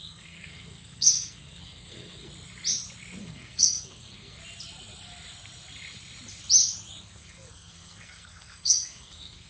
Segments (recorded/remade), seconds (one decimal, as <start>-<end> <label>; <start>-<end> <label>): 0.0-2.3 remade; 2.3-3.2 recorded; 3.2-4.4 remade; 4.4-7.0 recorded; 7.0-9.5 remade